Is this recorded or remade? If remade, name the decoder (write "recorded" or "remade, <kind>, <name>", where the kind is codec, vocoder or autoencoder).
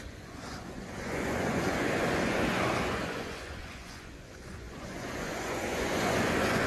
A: remade, vocoder, Vocos